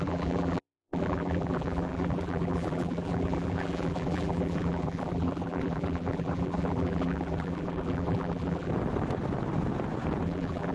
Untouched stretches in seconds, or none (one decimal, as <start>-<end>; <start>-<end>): 8.7-10.2